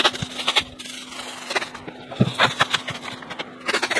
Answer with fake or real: real